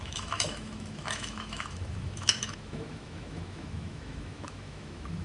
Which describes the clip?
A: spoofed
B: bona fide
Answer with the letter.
A